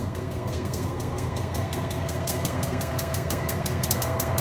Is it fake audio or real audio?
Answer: fake